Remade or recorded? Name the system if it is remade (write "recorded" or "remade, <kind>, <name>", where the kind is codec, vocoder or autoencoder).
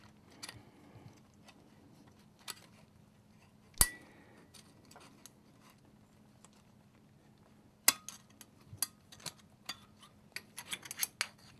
recorded